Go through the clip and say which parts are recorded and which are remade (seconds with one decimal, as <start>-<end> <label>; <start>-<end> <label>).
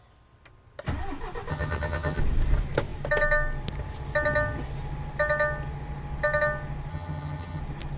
0.0-1.5 recorded; 1.5-2.2 remade; 2.2-6.9 recorded; 6.9-7.6 remade; 7.6-8.0 recorded